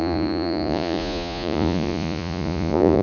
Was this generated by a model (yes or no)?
yes